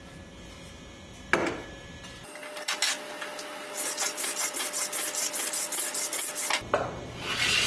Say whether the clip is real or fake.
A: real